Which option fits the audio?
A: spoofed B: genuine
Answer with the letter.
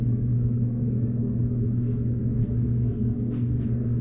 A